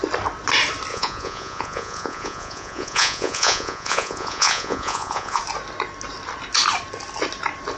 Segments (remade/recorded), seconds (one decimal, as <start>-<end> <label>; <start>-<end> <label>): 0.0-0.9 recorded; 0.9-5.4 remade; 5.4-7.8 recorded